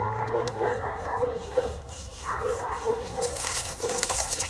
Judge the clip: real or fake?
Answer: fake